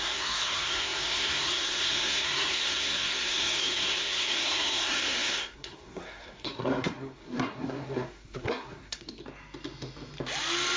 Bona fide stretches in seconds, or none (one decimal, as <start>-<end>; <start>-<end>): 9.2-10.8